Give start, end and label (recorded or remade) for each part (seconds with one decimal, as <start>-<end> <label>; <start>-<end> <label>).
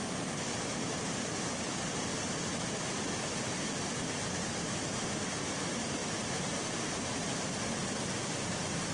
0.0-8.9 recorded